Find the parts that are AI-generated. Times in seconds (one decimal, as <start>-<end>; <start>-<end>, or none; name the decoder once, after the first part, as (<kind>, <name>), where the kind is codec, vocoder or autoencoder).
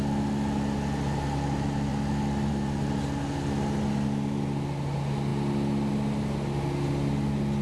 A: none